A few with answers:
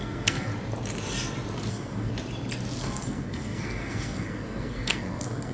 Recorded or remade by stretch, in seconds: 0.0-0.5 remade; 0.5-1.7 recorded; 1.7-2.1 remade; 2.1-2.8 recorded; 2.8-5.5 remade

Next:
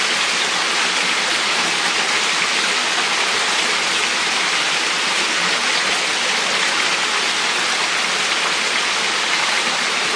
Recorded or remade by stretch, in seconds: 0.0-10.2 recorded

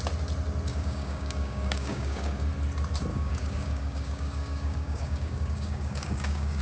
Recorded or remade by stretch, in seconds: 0.0-0.7 recorded; 0.7-2.5 remade; 2.5-3.1 recorded; 3.1-6.6 remade

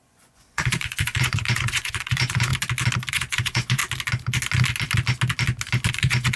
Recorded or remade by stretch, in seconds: 0.0-2.5 remade; 2.5-3.1 recorded; 3.1-3.8 remade; 3.8-5.9 recorded; 5.9-6.4 remade